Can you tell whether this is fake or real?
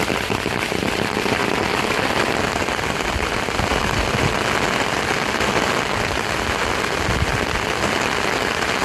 real